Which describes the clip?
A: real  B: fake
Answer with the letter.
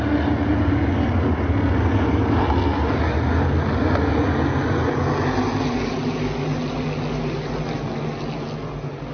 A